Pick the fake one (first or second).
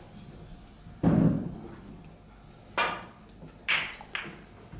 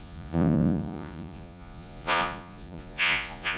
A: second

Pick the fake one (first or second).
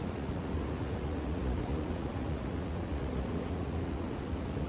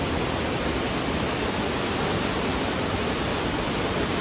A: first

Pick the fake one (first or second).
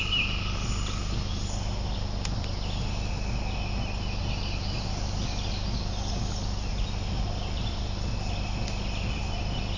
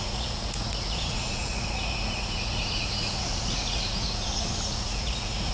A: second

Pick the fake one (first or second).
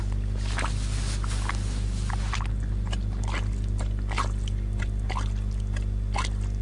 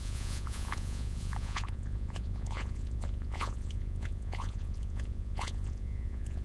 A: second